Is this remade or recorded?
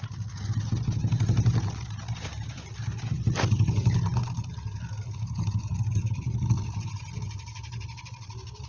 recorded